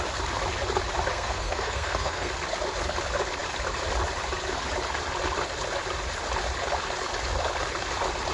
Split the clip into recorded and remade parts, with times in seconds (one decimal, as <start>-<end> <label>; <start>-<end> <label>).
0.0-1.1 recorded; 1.1-2.3 remade; 2.3-8.3 recorded